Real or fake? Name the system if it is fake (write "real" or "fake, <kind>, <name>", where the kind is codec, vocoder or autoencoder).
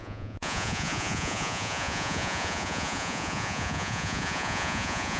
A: fake, vocoder, Vocos